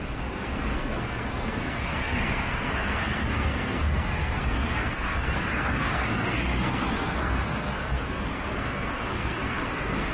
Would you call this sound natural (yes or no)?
no